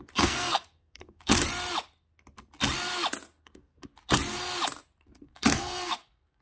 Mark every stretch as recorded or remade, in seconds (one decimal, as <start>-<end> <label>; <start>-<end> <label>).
0.0-1.4 remade; 1.4-3.4 recorded; 3.4-3.9 remade; 3.9-5.0 recorded; 5.0-6.4 remade